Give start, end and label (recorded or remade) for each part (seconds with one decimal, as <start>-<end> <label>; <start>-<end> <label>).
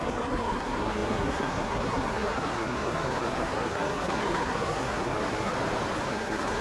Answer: 0.0-5.5 remade; 5.5-6.1 recorded; 6.1-6.6 remade